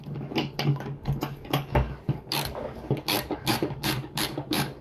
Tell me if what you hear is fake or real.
fake